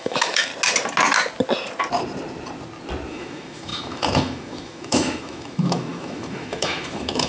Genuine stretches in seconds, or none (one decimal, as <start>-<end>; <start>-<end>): 0.5-3.1